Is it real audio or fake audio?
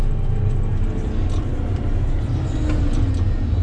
real